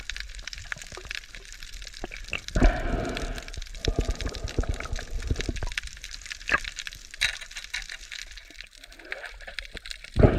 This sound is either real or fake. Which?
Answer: real